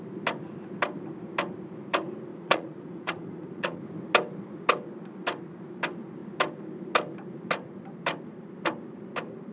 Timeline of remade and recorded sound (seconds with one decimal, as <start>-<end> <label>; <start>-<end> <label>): 0.0-2.3 recorded; 2.3-3.8 remade; 3.8-9.5 recorded